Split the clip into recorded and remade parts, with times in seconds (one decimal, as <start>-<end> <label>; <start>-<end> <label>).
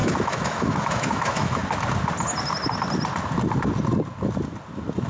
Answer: 0.0-1.6 remade; 1.6-5.1 recorded